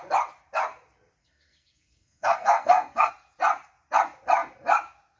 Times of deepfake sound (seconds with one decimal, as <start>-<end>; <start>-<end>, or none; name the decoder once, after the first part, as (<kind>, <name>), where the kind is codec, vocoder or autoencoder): 1.2-3.1 (codec, SNAC)